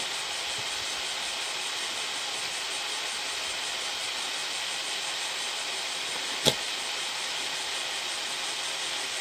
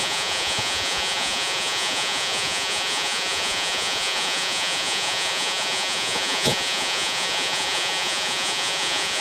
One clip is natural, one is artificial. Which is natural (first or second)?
first